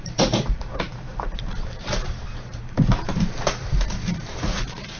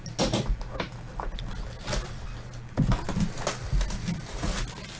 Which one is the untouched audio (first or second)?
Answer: second